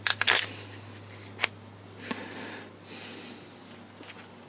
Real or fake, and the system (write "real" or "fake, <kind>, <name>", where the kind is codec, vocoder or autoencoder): real